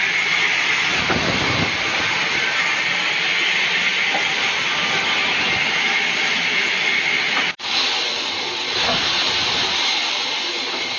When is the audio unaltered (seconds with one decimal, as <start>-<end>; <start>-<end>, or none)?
0.0-11.0